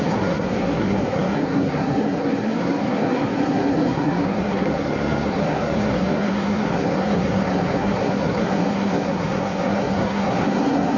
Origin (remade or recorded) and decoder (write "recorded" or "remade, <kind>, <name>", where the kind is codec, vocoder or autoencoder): remade, codec, SNAC